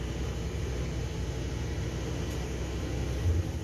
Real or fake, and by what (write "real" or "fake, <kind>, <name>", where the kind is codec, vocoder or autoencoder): real